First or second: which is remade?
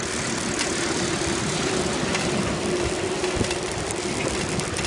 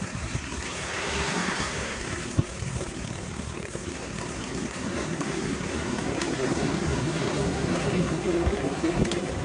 second